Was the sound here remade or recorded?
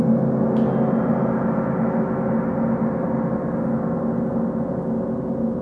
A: recorded